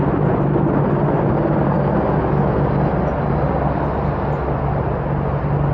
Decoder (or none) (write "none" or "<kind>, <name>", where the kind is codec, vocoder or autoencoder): none